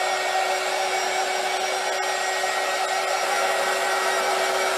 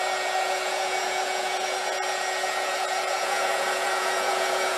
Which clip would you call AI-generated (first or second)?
second